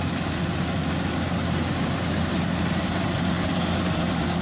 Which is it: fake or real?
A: fake